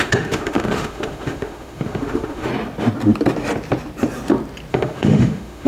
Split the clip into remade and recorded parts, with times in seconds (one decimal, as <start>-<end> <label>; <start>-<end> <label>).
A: 0.0-2.5 remade; 2.5-4.7 recorded; 4.7-5.7 remade